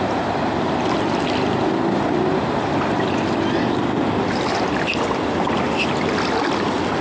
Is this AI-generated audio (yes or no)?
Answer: no